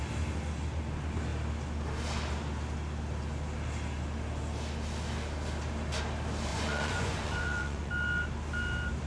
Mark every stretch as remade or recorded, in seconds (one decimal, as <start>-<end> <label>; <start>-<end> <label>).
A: 0.0-6.5 recorded; 6.5-7.9 remade; 7.9-9.1 recorded